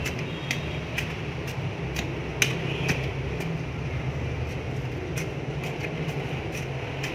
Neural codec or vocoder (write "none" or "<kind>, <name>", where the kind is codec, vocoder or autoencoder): none